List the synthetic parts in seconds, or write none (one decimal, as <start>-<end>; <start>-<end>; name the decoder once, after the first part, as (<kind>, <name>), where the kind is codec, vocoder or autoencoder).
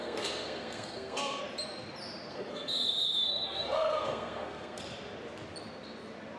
0.0-1.4 (codec, SNAC); 2.3-4.8